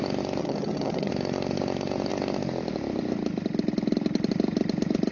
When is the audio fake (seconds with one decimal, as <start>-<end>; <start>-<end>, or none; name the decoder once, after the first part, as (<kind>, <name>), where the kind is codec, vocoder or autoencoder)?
0.4-1.1 (vocoder, HiFi-GAN)